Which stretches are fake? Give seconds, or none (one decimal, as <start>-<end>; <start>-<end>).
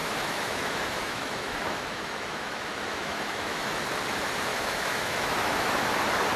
0.0-3.8; 4.5-5.9